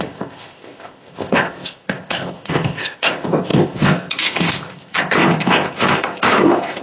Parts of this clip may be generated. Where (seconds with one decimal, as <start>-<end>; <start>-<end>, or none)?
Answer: 0.0-6.8